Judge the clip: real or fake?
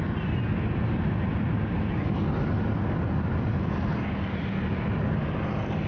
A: real